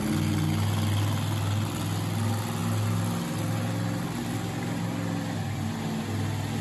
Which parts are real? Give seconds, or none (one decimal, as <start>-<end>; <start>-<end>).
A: 0.0-6.6